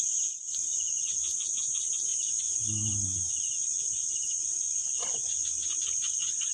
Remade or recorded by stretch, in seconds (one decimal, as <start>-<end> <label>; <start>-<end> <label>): 0.0-6.5 recorded